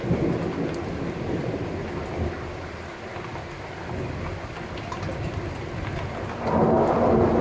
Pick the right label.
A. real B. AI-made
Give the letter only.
A